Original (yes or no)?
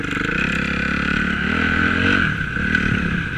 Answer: yes